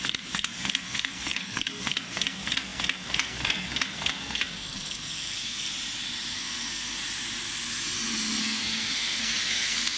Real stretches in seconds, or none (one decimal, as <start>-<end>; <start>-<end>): 5.7-6.3; 7.0-8.4

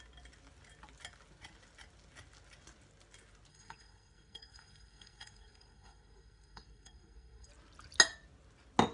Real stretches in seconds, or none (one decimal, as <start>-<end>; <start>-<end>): 0.0-3.5; 7.5-8.9

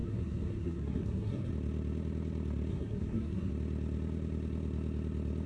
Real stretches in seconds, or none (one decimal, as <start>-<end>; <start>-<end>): 1.5-2.7; 3.5-5.5

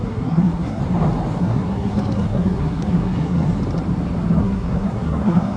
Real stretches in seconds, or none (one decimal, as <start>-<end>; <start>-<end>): 0.8-1.4; 3.5-4.4

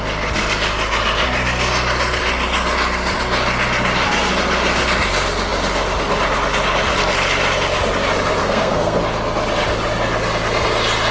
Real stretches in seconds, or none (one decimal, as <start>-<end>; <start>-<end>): 0.0-8.4; 9.0-11.1

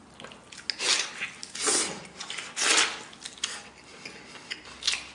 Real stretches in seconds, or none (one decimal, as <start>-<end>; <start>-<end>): 0.0-5.1

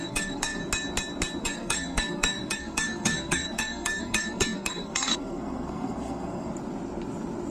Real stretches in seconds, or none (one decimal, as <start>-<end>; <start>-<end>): 0.6-1.4; 6.5-7.5

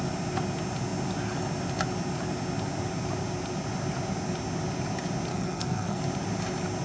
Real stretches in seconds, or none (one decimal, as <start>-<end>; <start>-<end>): 0.0-5.3; 6.0-6.8